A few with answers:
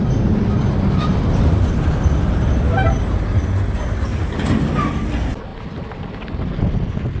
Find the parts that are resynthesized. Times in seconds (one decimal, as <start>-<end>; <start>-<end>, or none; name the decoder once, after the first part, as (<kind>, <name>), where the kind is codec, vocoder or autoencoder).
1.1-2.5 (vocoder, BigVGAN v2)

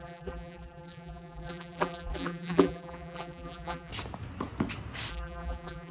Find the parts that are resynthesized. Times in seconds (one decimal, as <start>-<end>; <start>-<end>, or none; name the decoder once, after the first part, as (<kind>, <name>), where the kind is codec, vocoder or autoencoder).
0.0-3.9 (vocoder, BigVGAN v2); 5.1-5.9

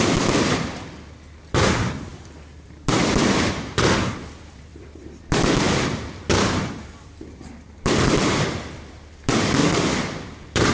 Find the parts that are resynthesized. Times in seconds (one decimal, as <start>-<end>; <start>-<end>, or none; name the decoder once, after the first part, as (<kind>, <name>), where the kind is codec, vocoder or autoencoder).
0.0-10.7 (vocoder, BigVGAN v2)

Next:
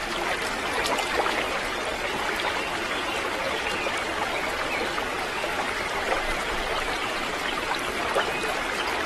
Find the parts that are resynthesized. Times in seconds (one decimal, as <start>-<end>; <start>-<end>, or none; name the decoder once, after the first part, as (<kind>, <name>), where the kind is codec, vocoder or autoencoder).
5.5-7.3 (vocoder, BigVGAN v2)

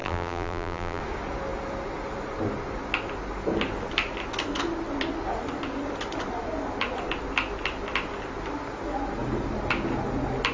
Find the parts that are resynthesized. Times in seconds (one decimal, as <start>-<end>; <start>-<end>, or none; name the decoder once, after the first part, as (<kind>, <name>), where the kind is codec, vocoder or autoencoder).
0.0-1.0 (vocoder, BigVGAN v2)

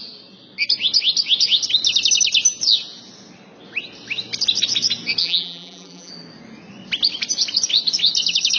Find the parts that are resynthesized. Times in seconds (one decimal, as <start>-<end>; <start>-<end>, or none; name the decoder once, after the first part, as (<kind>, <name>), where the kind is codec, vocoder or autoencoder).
5.2-6.1 (vocoder, BigVGAN v2)

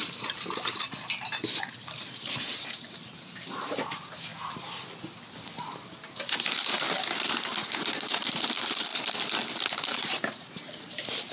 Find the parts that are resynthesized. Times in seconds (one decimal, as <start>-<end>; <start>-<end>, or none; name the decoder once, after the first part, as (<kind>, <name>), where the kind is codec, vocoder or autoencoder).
0.0-4.3 (vocoder, BigVGAN v2); 7.8-8.9; 9.9-11.3

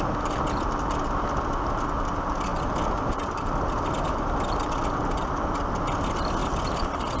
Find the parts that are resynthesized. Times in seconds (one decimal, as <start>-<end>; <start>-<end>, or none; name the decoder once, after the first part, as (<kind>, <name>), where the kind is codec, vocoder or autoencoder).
2.5-5.7 (vocoder, BigVGAN v2); 6.4-7.2